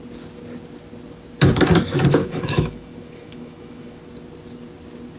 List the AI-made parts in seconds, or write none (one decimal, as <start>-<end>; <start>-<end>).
2.2-4.0